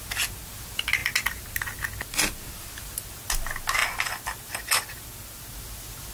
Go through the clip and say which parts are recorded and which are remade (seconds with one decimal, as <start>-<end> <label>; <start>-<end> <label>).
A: 0.0-6.1 recorded